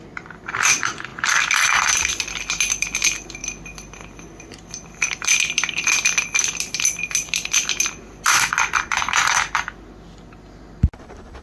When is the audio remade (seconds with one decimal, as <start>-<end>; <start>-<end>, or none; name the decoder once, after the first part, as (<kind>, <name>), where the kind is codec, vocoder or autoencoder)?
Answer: none